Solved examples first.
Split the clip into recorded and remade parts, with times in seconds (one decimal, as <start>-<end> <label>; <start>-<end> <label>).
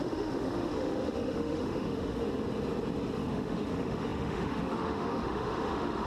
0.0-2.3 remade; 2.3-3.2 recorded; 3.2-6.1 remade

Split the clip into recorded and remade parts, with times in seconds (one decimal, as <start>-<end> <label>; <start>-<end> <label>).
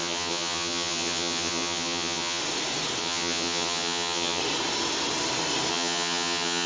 0.0-2.4 remade; 2.4-3.0 recorded; 3.0-4.4 remade; 4.4-5.7 recorded; 5.7-6.7 remade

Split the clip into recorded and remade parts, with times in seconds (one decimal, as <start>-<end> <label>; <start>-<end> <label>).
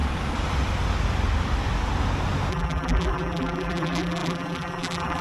0.0-2.5 recorded; 2.5-5.2 remade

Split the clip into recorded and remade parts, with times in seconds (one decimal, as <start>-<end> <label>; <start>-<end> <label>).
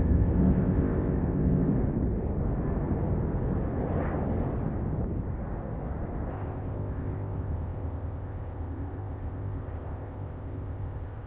0.0-1.7 remade; 1.7-6.3 recorded; 6.3-11.3 remade